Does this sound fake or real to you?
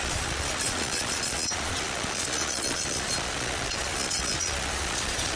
fake